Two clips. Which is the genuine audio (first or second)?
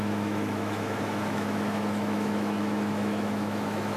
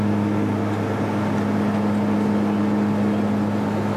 second